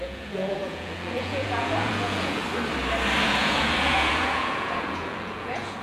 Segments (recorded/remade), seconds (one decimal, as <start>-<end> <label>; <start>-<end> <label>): 0.0-2.4 remade; 2.4-3.2 recorded; 3.2-5.8 remade